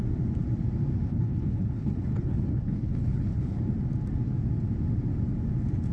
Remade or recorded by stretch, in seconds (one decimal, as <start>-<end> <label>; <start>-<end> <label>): 0.0-1.1 recorded; 1.1-3.6 remade; 3.6-5.9 recorded